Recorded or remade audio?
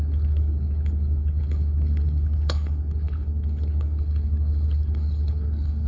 remade